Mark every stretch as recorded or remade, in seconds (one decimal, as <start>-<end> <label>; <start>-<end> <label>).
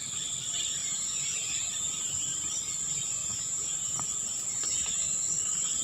0.0-0.8 recorded; 0.8-2.0 remade; 2.0-3.2 recorded; 3.2-4.0 remade; 4.0-5.8 recorded